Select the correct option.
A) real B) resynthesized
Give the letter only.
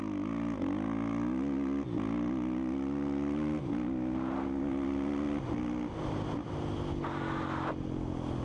A